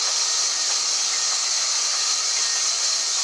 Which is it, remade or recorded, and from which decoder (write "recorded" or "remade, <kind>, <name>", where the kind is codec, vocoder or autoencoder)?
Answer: recorded